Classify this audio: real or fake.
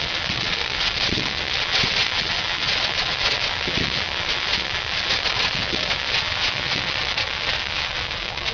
fake